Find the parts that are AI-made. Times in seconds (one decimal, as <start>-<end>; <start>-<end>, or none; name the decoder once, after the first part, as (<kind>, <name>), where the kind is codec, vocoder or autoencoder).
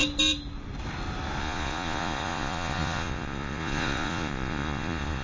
1.4-5.2 (vocoder, Vocos)